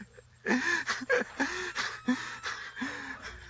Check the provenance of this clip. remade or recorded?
recorded